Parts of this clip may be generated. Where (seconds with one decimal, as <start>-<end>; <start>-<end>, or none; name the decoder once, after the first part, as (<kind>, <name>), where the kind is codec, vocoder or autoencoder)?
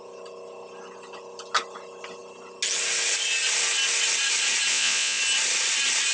4.7-5.2 (vocoder, Vocos)